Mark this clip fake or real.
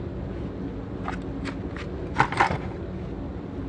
real